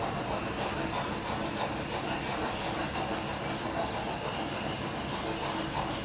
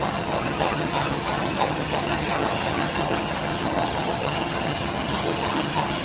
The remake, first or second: second